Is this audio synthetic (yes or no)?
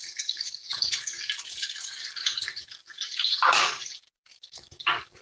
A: yes